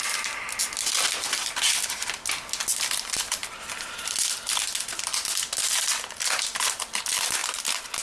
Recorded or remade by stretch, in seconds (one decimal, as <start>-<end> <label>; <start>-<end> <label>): 0.0-8.0 recorded